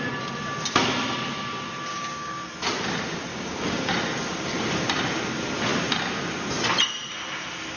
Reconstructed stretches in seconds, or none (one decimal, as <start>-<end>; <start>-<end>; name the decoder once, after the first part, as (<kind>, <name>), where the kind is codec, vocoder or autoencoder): 1.9-2.5 (codec, DAC); 3.3-3.9